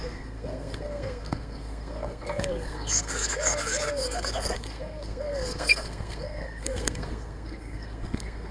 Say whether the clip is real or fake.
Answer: fake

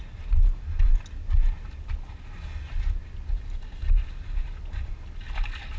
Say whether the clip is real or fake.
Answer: real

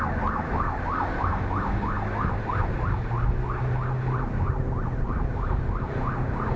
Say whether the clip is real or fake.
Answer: real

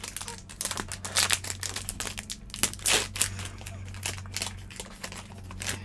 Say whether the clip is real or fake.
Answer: real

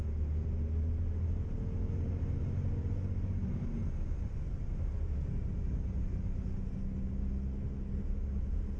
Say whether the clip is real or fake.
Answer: real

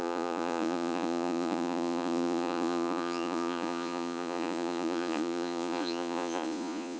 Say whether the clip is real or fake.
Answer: fake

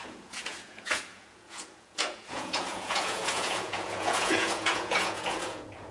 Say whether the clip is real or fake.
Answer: fake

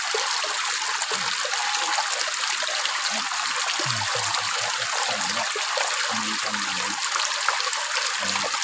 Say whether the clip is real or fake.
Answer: real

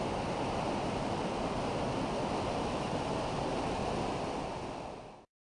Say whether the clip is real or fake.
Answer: real